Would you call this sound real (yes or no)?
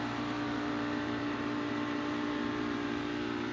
no